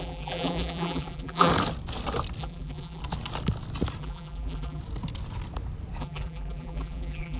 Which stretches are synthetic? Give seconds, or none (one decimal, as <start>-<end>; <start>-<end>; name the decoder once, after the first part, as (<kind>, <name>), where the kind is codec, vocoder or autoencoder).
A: 0.0-1.5 (vocoder, BigVGAN v2); 2.4-3.0; 4.0-4.8; 6.0-7.4